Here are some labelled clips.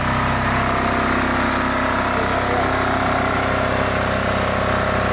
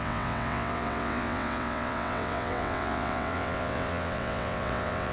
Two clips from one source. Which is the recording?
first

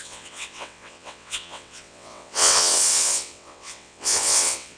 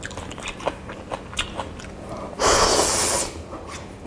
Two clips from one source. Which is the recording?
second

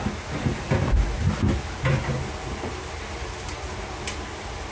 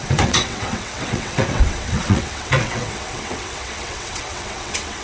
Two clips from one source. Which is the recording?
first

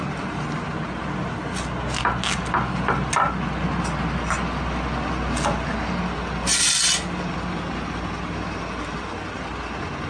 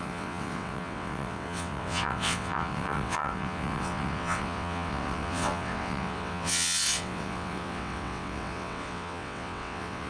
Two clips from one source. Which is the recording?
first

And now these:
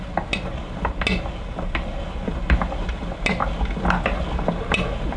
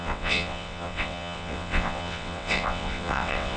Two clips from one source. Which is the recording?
first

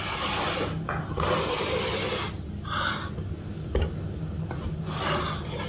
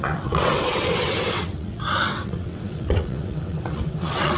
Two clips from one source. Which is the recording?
first